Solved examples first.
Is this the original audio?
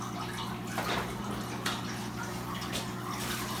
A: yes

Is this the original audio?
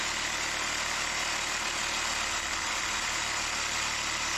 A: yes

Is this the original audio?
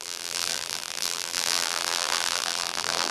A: no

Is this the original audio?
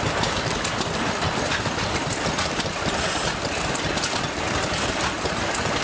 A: yes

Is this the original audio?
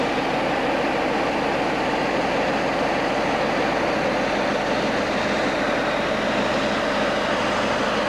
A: yes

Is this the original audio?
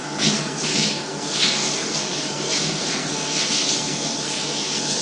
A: no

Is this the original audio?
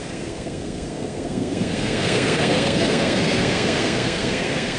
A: no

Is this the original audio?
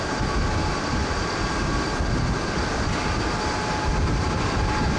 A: yes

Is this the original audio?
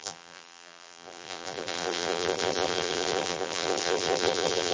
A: no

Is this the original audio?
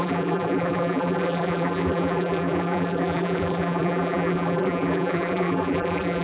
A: no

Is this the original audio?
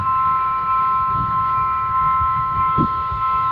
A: no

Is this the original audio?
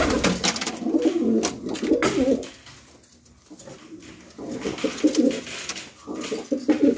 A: yes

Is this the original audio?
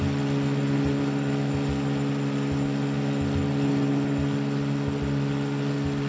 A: yes